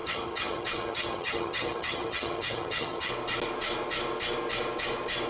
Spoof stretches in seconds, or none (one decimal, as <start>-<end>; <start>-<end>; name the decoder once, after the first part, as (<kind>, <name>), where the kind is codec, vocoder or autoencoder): 0.0-3.1 (vocoder, HiFi-GAN)